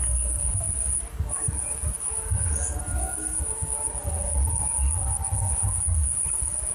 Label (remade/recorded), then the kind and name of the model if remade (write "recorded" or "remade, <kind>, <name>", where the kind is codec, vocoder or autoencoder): remade, codec, DAC